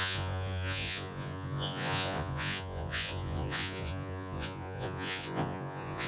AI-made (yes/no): yes